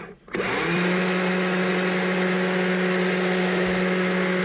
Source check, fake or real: real